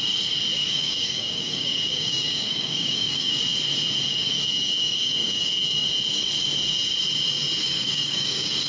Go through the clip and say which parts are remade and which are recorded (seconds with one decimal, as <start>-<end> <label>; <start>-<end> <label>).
0.0-0.6 recorded; 0.6-3.4 remade; 3.4-4.1 recorded; 4.1-5.9 remade; 5.9-7.7 recorded; 7.7-8.7 remade